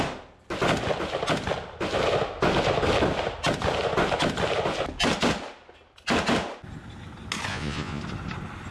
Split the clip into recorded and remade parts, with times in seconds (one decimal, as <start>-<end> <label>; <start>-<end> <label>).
0.0-7.5 recorded; 7.5-8.0 remade; 8.0-8.7 recorded